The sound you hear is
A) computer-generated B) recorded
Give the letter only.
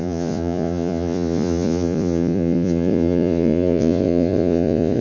A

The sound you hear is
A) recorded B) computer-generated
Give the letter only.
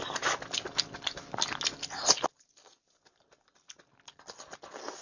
A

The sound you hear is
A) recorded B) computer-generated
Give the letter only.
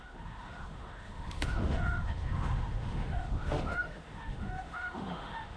B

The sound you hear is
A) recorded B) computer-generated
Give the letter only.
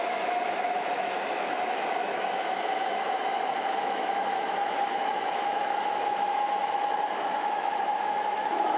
B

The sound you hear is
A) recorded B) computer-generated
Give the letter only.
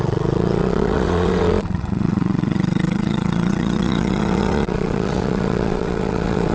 B